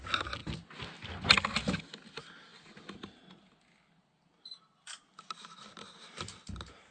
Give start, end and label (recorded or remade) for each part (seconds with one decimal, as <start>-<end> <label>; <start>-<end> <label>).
0.0-6.9 recorded